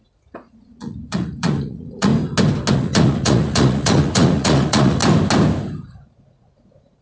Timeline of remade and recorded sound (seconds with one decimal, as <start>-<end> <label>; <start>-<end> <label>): 0.0-2.1 remade; 2.1-2.7 recorded; 2.7-5.0 remade; 5.0-6.1 recorded; 6.1-7.0 remade